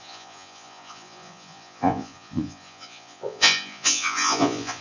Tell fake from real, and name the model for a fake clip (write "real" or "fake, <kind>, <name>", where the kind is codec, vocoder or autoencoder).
fake, vocoder, Vocos